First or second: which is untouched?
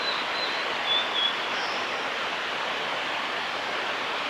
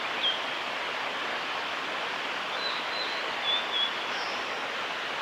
second